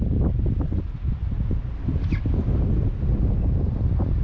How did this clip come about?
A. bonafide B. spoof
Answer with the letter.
A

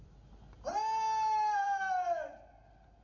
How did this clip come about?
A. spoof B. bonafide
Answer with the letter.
B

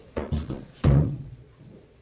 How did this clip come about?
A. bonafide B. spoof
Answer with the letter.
B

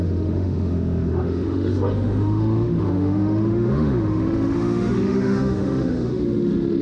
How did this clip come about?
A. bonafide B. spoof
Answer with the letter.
B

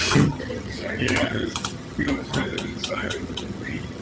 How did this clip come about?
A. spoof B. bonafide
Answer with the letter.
A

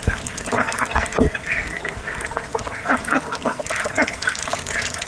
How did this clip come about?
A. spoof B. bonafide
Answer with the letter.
A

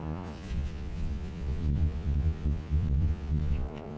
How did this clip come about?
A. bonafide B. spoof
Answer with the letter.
B